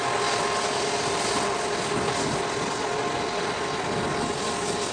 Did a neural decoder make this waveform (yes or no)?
no